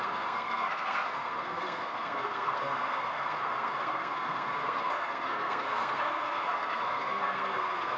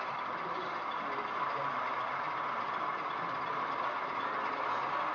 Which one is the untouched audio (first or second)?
second